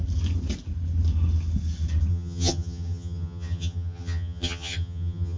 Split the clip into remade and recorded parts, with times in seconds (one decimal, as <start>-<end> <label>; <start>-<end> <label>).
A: 0.0-2.1 recorded; 2.1-5.4 remade